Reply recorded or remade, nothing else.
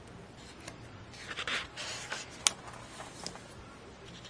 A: recorded